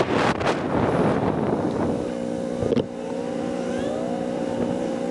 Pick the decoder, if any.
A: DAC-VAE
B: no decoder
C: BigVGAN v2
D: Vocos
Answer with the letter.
B